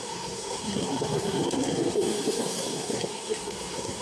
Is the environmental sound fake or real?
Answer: fake